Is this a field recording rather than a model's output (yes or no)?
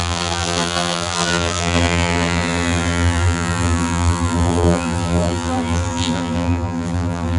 no